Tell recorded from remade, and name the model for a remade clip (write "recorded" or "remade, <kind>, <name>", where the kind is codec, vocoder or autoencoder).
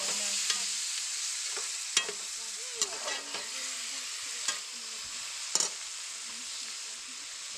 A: recorded